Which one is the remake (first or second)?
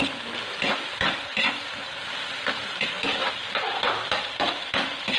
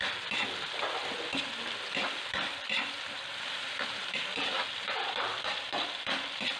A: second